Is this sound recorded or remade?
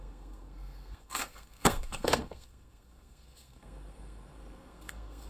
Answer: remade